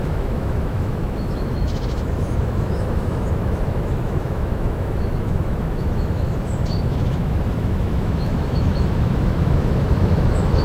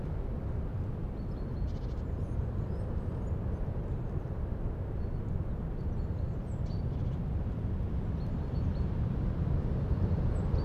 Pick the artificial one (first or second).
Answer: first